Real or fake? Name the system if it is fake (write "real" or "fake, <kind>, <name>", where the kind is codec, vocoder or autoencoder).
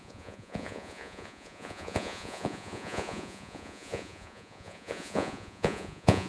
fake, vocoder, Vocos